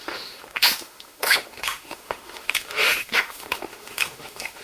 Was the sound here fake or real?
fake